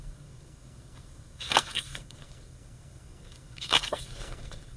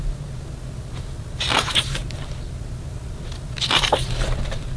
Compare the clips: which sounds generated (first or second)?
first